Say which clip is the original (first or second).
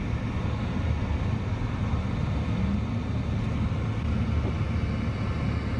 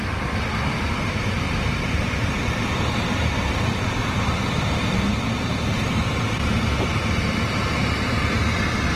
first